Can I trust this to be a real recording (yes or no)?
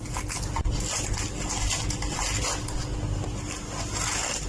yes